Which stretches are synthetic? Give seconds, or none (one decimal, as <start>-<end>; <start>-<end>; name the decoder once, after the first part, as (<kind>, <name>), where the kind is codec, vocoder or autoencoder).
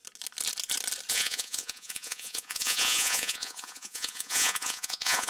1.1-5.3 (vocoder, Vocos)